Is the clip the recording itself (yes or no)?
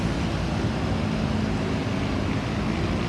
yes